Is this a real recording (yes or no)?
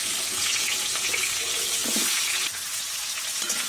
no